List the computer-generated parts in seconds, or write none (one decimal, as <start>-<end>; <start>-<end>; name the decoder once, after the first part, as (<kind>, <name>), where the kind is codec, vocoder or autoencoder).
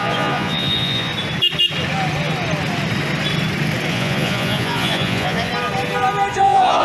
0.0-1.1 (vocoder, Vocos); 3.9-5.5; 6.3-6.8